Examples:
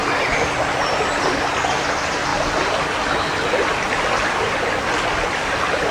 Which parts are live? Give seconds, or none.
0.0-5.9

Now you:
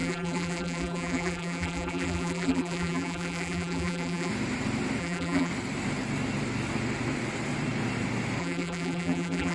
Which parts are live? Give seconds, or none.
4.3-5.0; 5.5-8.4

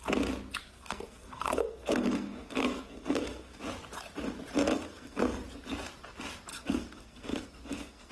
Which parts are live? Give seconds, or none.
0.0-0.6; 3.6-4.7; 5.2-6.5

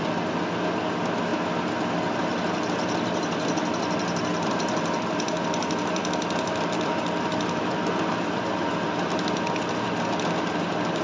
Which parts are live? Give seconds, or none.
0.0-4.3; 8.7-11.0

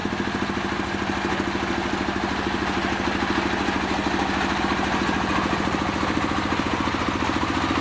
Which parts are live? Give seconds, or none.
0.0-7.8

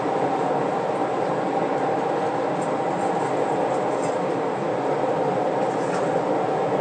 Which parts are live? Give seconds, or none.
0.0-6.8